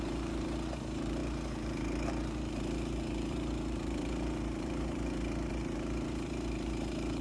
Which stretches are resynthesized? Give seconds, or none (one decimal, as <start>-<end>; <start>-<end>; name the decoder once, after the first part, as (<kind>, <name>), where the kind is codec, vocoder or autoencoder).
0.0-7.2 (vocoder, BigVGAN v2)